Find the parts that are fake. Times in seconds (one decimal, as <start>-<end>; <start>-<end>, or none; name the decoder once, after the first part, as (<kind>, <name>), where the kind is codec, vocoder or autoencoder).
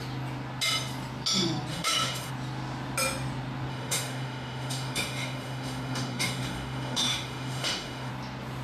1.7-2.3 (autoencoder, DAC-VAE); 3.7-8.1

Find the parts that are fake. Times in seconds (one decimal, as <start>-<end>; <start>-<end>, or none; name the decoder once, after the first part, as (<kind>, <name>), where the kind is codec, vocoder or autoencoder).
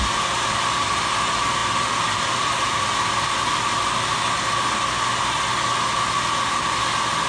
none